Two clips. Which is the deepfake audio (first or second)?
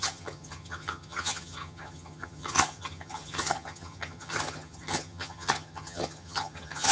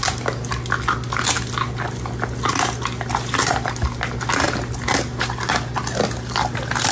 first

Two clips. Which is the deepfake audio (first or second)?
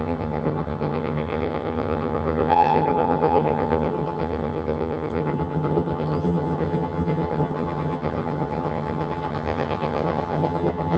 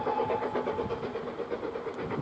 first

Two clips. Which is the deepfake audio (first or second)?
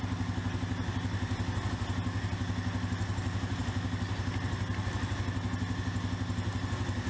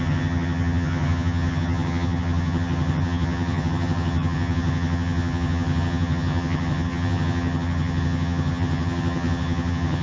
second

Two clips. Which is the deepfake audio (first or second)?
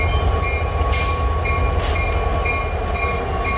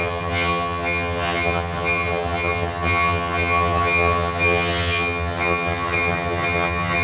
second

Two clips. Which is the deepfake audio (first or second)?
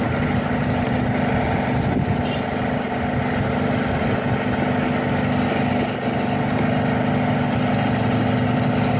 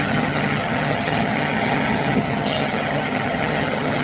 second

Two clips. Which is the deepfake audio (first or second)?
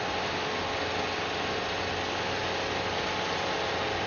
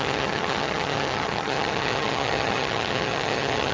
second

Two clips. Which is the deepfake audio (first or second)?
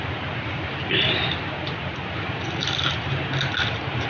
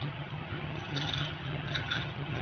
second